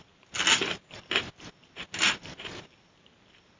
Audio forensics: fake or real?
real